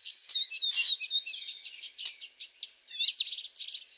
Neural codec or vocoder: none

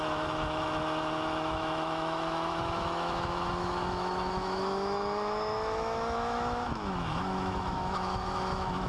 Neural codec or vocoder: autoencoder, DAC-VAE